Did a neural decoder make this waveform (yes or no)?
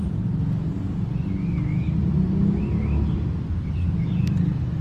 no